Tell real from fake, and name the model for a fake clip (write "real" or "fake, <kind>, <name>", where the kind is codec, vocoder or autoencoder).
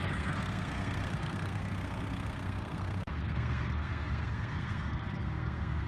fake, codec, SNAC